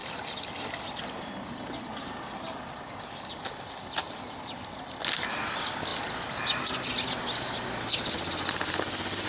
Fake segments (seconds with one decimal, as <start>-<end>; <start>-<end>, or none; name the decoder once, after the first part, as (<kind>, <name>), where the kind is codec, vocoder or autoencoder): none